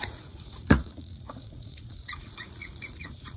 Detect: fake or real fake